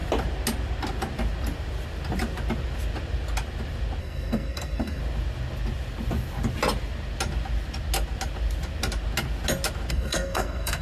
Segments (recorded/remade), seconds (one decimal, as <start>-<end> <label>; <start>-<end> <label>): 0.0-4.0 recorded; 4.0-5.0 remade; 5.0-9.9 recorded; 9.9-10.8 remade